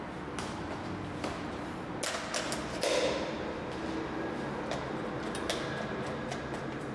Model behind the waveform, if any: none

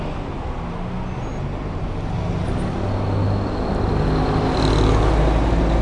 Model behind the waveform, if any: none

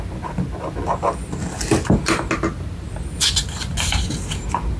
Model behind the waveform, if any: none